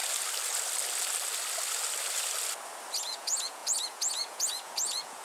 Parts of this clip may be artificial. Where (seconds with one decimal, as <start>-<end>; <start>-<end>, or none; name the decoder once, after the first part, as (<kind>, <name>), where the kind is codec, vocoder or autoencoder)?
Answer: 3.0-5.2 (vocoder, Vocos)